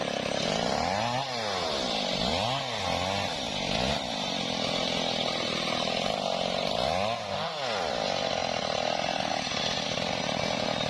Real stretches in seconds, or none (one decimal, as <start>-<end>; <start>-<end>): 0.0-10.9